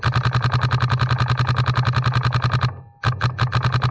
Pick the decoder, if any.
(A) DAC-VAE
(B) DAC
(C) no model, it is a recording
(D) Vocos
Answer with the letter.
C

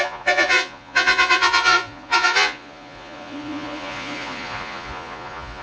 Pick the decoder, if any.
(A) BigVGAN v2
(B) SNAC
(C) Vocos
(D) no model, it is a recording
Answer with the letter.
C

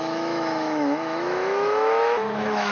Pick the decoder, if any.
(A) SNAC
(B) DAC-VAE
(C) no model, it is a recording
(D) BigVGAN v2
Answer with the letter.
B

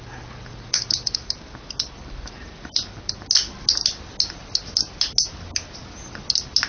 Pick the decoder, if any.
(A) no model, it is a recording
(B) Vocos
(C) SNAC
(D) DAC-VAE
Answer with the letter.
A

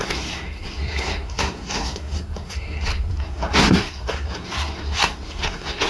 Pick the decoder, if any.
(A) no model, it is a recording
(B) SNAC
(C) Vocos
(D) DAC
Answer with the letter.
B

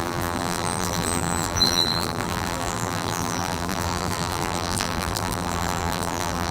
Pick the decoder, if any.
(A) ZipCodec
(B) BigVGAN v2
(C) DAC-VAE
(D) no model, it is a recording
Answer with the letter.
B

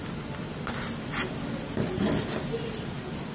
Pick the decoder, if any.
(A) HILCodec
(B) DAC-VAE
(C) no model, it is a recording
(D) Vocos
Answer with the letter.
C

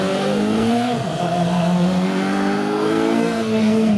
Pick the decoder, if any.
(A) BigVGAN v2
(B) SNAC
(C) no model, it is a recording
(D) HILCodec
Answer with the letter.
B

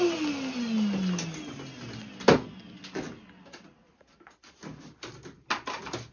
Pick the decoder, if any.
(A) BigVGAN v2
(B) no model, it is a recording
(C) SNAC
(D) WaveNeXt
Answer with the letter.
B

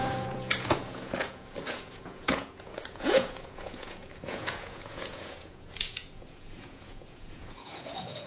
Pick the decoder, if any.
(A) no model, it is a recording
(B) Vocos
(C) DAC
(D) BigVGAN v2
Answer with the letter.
B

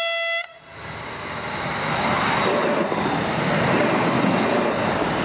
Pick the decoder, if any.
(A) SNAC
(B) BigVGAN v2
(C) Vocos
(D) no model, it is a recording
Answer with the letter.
D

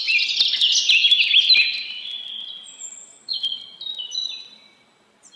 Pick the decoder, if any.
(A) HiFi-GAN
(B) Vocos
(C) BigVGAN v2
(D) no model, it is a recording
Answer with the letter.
D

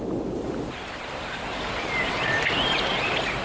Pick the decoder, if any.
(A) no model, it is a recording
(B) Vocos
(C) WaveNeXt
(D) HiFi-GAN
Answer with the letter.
A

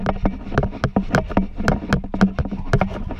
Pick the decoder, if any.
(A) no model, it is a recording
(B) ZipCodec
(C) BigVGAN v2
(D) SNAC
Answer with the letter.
A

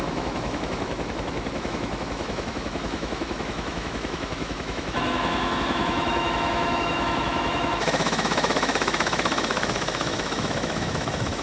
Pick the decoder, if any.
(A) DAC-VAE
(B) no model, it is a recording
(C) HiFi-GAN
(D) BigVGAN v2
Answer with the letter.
A